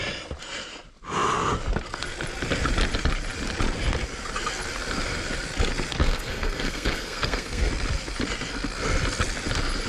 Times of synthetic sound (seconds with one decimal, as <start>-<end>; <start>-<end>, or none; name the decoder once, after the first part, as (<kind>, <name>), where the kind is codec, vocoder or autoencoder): 6.0-7.7 (codec, SNAC)